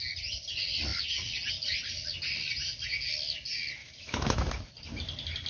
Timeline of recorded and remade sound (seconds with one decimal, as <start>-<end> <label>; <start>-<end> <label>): 0.0-3.8 recorded; 3.8-4.5 remade; 4.5-5.5 recorded